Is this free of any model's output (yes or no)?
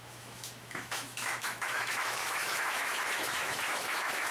no